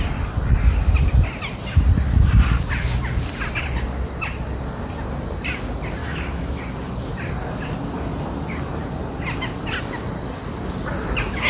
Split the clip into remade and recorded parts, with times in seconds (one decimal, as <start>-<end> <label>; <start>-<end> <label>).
0.0-6.0 recorded; 6.0-6.6 remade; 6.6-11.5 recorded